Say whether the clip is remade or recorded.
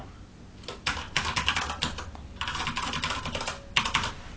recorded